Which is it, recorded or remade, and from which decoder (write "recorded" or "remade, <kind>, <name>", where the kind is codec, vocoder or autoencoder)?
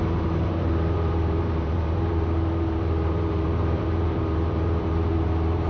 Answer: remade, vocoder, BigVGAN v2